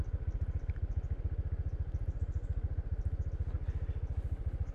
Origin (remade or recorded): recorded